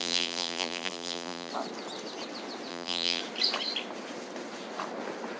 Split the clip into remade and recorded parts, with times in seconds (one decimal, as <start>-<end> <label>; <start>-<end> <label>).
0.0-1.5 remade; 1.5-2.7 recorded; 2.7-3.2 remade; 3.2-5.4 recorded